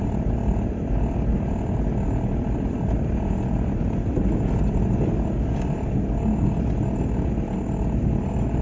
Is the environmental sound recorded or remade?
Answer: recorded